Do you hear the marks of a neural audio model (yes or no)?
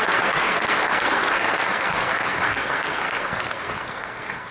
yes